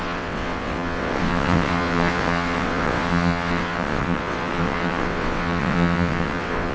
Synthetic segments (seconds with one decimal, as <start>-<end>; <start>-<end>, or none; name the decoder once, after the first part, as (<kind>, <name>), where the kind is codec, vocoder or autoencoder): 0.0-6.7 (vocoder, WaveNeXt)